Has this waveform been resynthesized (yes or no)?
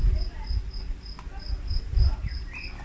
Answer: no